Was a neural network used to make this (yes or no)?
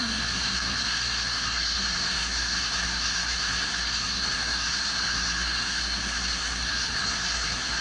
yes